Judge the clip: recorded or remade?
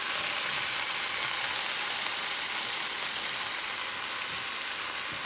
recorded